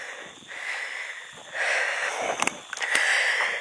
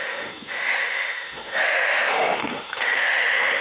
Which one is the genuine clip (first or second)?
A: first